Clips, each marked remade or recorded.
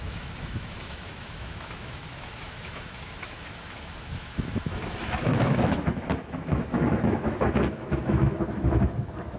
remade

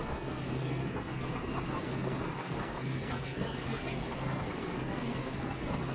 remade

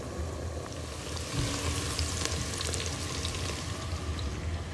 recorded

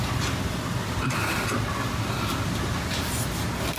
recorded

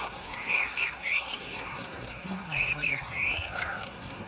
remade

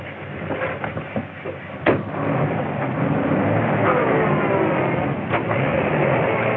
recorded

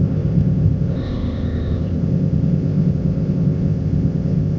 remade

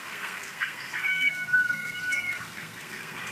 remade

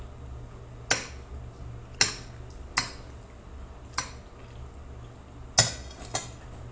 recorded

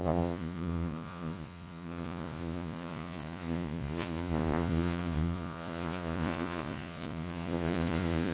remade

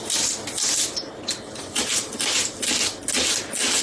recorded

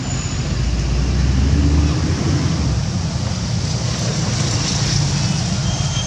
recorded